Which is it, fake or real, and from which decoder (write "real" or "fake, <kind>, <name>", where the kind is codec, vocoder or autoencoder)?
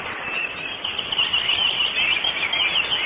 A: real